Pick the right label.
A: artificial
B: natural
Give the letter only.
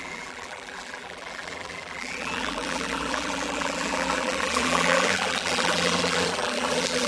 A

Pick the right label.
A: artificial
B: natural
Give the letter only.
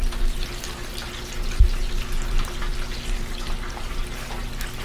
B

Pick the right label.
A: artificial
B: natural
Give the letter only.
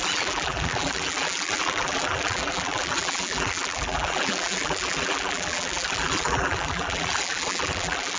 A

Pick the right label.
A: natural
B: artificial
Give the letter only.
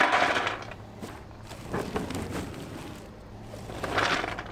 B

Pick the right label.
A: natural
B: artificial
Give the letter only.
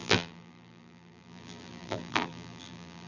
B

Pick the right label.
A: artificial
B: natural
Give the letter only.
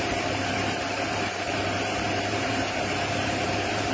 A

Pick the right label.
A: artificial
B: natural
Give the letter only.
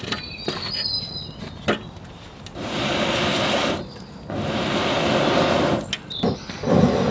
B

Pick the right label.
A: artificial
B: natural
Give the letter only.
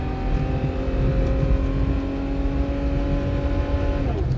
B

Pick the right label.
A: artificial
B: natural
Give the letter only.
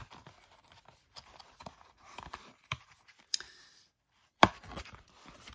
A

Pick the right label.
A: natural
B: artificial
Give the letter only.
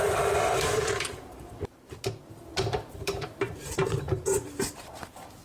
B